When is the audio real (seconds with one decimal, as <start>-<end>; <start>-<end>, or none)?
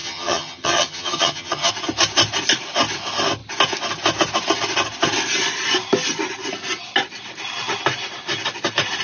1.7-9.0